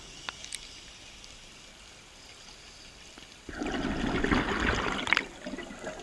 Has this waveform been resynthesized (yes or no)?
no